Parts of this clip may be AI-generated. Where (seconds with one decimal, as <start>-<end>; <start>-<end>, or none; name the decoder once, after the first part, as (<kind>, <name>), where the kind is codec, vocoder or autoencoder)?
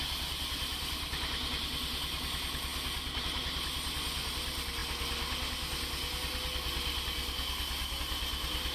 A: none